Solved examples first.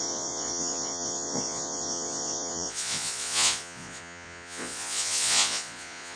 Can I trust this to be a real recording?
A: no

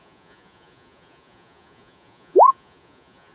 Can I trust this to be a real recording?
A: no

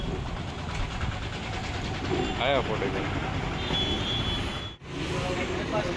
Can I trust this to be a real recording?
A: yes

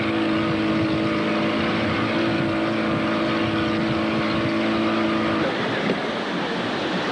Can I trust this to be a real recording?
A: yes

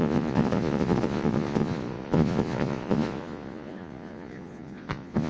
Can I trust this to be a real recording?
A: no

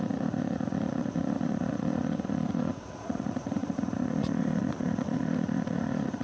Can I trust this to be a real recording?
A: no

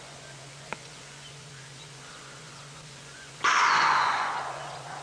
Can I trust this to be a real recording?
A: no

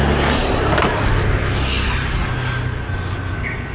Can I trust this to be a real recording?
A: yes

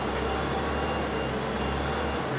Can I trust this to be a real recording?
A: yes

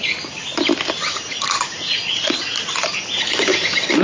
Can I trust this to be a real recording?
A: yes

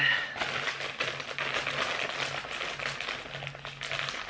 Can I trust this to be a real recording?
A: yes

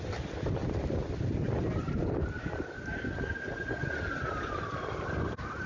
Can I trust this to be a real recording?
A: yes